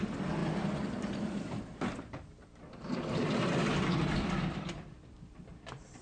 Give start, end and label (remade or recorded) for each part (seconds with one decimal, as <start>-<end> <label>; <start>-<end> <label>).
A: 0.0-6.0 remade